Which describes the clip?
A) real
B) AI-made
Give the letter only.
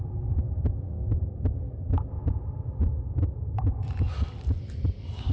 A